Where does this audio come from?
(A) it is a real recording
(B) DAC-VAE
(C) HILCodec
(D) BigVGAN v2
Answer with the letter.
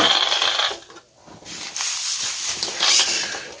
A